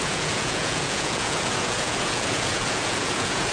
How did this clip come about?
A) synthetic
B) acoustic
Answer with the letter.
A